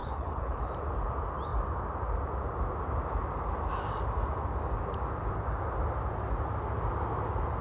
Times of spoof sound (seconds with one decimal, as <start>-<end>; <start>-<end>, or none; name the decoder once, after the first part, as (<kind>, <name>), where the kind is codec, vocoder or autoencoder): 0.0-0.6 (codec, HILCodec)